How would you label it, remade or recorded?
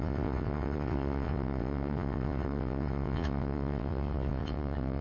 remade